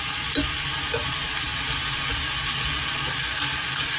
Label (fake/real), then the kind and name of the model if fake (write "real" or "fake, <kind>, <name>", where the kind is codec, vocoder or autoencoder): real